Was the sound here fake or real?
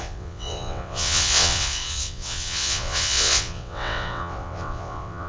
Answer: fake